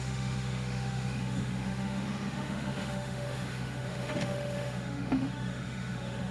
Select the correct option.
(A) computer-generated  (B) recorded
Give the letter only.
A